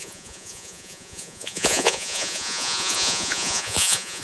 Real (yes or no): no